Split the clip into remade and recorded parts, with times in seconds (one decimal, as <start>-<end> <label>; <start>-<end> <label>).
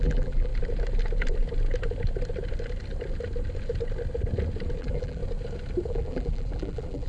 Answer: 0.0-0.5 remade; 0.5-4.8 recorded; 4.8-5.2 remade; 5.2-5.9 recorded; 5.9-7.1 remade